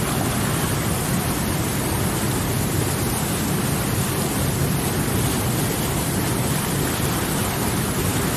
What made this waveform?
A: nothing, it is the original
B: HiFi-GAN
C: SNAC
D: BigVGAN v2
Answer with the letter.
A